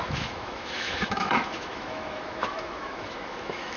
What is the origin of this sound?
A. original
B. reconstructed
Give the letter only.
B